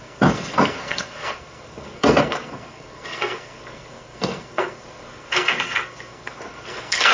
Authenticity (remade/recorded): remade